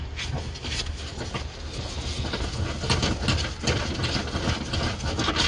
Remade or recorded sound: recorded